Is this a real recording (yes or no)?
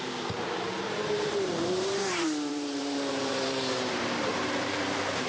no